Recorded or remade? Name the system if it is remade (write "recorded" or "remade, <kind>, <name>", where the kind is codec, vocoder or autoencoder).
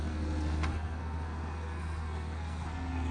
remade, codec, SNAC